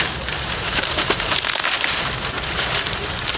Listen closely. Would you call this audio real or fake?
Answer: fake